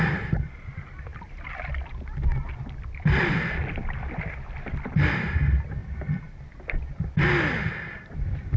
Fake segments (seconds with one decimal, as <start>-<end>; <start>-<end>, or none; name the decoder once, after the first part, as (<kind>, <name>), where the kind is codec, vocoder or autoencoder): none